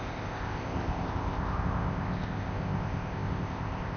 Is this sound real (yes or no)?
no